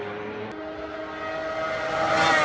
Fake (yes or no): no